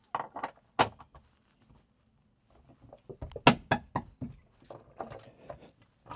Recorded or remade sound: recorded